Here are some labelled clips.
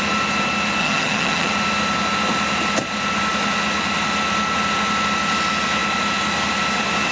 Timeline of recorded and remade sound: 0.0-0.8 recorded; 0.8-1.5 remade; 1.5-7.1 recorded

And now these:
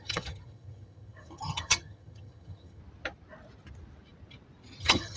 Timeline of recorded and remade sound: 0.0-2.8 remade; 2.8-4.8 recorded; 4.8-5.2 remade